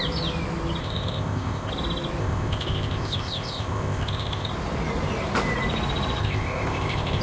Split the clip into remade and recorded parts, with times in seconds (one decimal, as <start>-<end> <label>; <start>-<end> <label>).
0.0-0.8 recorded; 0.8-1.7 remade; 1.7-2.2 recorded; 2.2-4.5 remade; 4.5-6.2 recorded; 6.2-7.2 remade